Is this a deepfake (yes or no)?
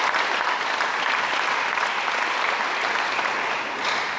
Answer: no